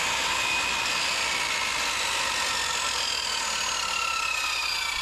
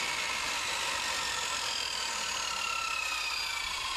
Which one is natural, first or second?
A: first